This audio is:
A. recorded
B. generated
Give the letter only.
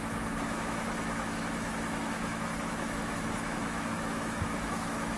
B